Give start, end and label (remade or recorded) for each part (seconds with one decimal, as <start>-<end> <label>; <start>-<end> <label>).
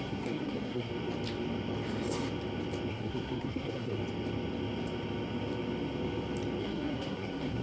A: 0.0-0.9 remade; 0.9-2.9 recorded; 2.9-4.0 remade; 4.0-6.6 recorded; 6.6-7.6 remade